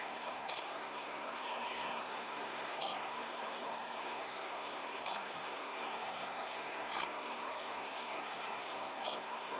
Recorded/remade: remade